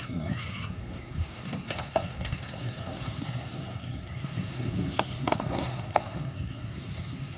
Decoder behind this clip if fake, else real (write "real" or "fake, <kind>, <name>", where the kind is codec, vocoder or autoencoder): fake, codec, SNAC